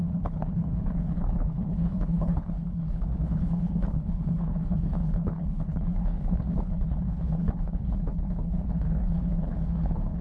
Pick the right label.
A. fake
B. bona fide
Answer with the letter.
A